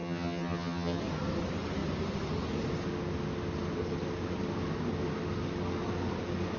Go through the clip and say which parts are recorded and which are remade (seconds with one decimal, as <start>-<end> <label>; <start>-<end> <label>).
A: 0.0-1.0 remade; 1.0-6.6 recorded